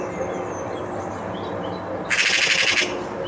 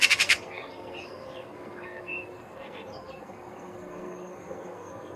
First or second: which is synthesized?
second